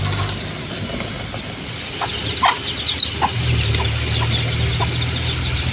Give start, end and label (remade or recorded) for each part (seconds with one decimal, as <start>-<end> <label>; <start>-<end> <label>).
0.0-5.7 recorded

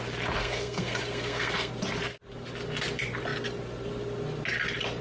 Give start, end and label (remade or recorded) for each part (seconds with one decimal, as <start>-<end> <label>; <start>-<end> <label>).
0.0-0.4 recorded; 0.4-1.7 remade; 1.7-5.0 recorded

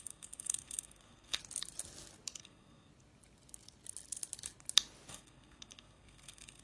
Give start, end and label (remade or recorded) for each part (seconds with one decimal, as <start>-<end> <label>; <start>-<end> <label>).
0.0-1.4 remade; 1.4-2.4 recorded; 2.4-2.9 remade; 2.9-5.1 recorded; 5.1-6.6 remade

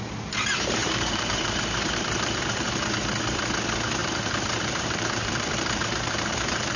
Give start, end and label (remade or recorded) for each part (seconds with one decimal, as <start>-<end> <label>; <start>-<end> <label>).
0.0-0.8 recorded; 0.8-2.8 remade; 2.8-4.0 recorded; 4.0-6.8 remade

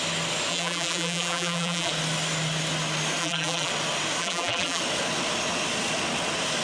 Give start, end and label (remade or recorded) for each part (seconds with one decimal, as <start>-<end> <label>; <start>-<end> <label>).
0.0-0.5 recorded; 0.5-1.9 remade; 1.9-3.2 recorded; 3.2-3.7 remade; 3.7-4.2 recorded; 4.2-4.8 remade; 4.8-6.6 recorded